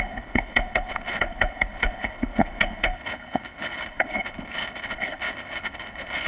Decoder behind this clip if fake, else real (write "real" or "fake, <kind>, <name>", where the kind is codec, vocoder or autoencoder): fake, codec, HILCodec